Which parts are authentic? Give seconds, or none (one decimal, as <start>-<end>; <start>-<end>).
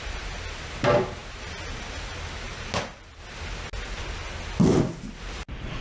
0.0-5.8